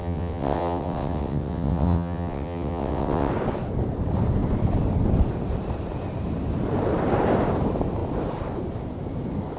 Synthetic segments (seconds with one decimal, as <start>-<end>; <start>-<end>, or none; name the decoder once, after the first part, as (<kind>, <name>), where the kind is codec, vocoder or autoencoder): 0.0-3.3 (vocoder, WaveNeXt)